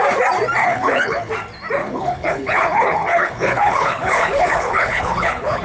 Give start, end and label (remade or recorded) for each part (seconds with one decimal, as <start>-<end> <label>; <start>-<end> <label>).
0.0-0.6 recorded; 0.6-1.3 remade; 1.3-1.8 recorded; 1.8-5.6 remade